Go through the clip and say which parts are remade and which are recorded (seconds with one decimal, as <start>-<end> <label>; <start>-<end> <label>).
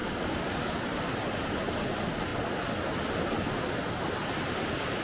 0.0-5.0 recorded